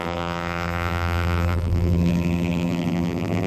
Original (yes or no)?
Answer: no